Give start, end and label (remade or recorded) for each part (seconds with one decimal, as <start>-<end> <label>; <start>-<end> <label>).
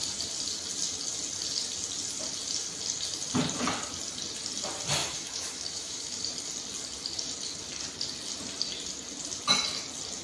0.0-5.0 recorded; 5.0-6.2 remade; 6.2-10.2 recorded